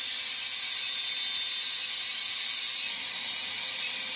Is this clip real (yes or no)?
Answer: yes